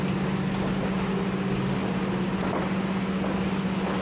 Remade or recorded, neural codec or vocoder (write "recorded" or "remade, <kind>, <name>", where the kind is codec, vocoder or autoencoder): recorded